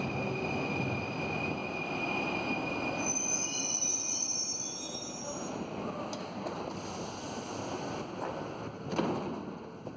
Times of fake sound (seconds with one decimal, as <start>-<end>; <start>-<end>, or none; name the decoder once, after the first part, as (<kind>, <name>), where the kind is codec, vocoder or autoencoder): none